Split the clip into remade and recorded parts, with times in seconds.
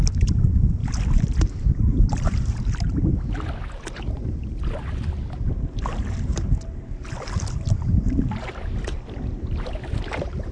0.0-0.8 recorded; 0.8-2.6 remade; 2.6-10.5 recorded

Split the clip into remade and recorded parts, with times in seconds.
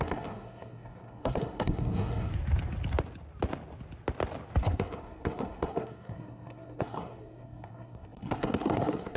0.0-2.3 remade; 2.3-4.6 recorded; 4.6-9.2 remade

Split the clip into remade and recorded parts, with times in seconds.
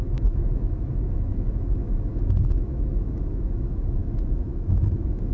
0.0-5.3 remade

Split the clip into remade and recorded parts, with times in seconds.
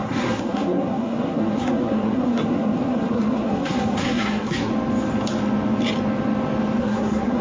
0.0-4.7 remade; 4.7-6.8 recorded; 6.8-7.4 remade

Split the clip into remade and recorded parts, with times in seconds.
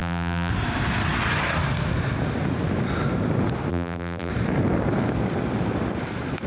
0.0-0.5 remade; 0.5-3.7 recorded; 3.7-4.3 remade; 4.3-6.5 recorded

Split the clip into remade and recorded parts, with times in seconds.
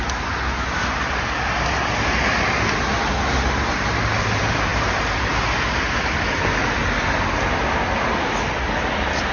0.0-9.3 recorded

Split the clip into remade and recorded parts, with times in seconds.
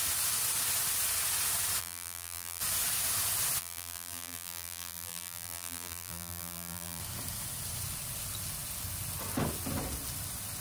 0.0-1.8 recorded; 1.8-2.6 remade; 2.6-3.6 recorded; 3.6-7.0 remade; 7.0-10.6 recorded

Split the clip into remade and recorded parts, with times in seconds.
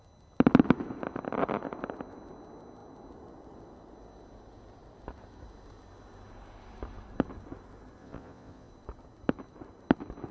0.0-8.0 recorded; 8.0-8.7 remade; 8.7-10.3 recorded